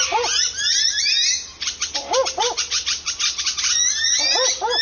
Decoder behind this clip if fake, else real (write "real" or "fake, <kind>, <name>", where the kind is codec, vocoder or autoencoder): real